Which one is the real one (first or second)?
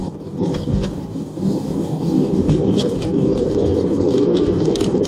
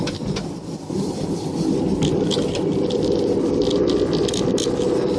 second